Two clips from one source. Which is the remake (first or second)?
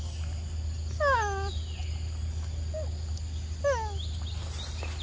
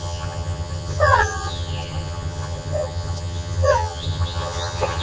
second